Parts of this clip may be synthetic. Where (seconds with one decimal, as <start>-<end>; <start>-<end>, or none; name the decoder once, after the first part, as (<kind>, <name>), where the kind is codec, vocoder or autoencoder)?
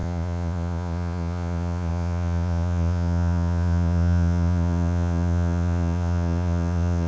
0.0-7.1 (vocoder, Vocos)